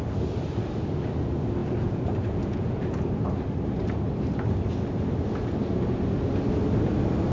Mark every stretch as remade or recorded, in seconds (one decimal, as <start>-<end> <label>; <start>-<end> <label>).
0.0-1.6 recorded; 1.6-3.0 remade; 3.0-7.3 recorded